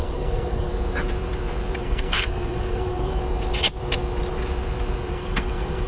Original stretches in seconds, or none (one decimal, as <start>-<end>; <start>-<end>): 0.7-1.8; 3.2-5.1